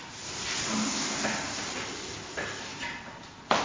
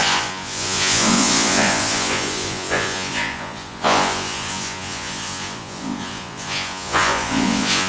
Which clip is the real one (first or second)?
first